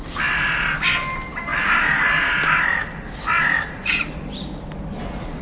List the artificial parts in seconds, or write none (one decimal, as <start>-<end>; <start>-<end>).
none